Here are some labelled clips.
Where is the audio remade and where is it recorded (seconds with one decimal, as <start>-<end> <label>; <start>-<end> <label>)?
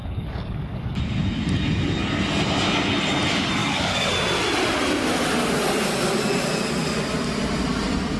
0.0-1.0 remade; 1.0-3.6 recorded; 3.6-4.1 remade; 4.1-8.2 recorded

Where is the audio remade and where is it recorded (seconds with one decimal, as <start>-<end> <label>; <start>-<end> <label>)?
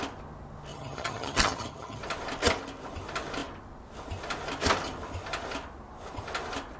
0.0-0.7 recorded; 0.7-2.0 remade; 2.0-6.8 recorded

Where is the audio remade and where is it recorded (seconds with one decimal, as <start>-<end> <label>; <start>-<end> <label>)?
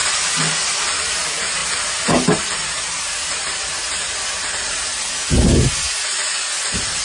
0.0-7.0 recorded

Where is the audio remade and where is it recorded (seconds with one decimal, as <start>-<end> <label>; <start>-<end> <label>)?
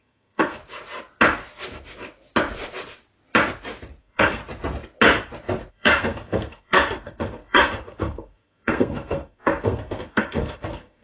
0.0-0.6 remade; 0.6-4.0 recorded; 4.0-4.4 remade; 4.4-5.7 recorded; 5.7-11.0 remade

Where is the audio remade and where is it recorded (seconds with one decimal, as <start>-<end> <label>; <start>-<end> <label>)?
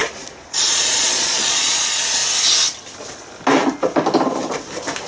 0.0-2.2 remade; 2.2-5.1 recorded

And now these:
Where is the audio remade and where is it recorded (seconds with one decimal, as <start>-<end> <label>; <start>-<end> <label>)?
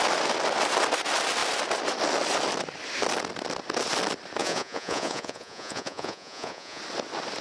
0.0-4.4 recorded; 4.4-6.8 remade; 6.8-7.4 recorded